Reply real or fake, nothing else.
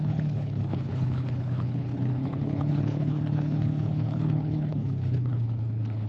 fake